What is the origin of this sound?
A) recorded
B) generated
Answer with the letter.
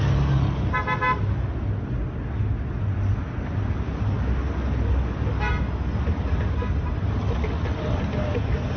A